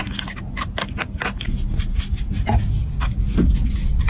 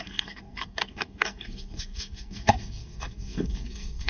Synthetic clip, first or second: second